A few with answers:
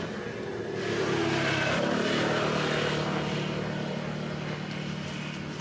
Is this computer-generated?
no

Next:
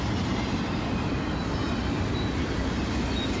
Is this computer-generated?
no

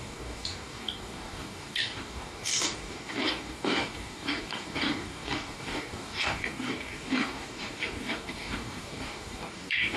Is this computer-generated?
yes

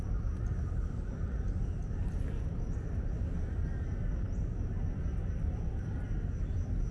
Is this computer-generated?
no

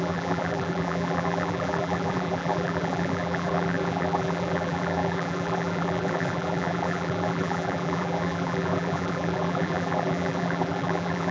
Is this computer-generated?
yes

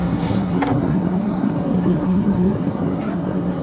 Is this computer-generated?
yes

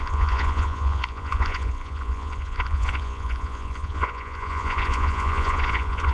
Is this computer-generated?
yes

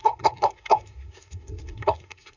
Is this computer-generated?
yes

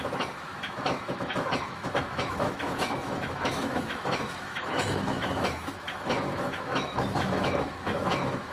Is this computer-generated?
yes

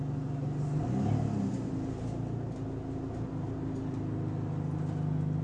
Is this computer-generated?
no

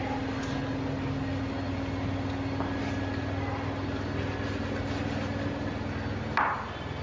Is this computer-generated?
no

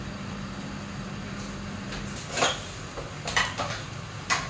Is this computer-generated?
no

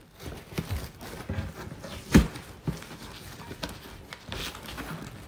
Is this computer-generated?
no